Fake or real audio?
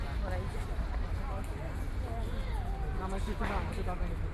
real